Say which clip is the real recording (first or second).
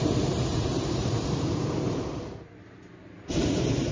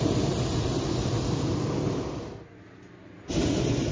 second